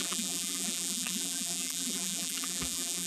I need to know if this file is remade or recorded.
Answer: remade